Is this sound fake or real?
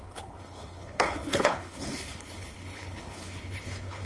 fake